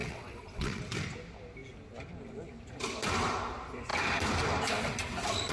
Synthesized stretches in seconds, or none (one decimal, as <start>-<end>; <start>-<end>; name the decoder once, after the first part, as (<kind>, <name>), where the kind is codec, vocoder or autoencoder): 0.0-0.8 (vocoder, WaveNeXt)

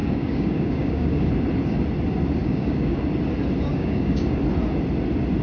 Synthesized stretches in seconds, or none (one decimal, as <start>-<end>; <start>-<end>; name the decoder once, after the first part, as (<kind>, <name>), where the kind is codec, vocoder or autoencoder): 0.0-1.3 (codec, DAC); 2.4-3.0; 3.7-4.4

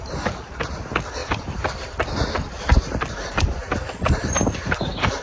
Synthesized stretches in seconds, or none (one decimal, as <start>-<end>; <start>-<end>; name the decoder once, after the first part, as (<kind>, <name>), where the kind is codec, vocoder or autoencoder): 1.2-4.3 (vocoder, BigVGAN v2)

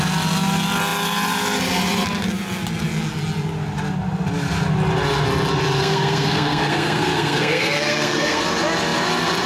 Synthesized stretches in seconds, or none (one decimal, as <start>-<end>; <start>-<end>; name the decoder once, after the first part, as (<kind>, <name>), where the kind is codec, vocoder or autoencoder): 5.8-8.4 (codec, SNAC)

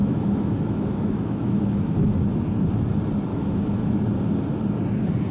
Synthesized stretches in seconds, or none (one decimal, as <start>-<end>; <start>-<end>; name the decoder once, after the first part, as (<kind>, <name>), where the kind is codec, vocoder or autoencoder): 0.0-2.2 (autoencoder, DAC-VAE); 3.3-3.9